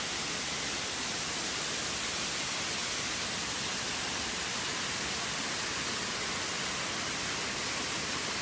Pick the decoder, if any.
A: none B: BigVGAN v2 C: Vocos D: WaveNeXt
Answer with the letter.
A